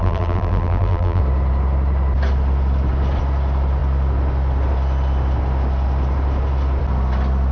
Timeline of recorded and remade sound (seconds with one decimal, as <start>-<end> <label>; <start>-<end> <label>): 0.0-1.2 remade; 1.2-7.5 recorded